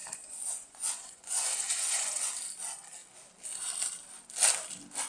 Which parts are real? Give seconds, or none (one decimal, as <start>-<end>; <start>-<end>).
2.3-5.1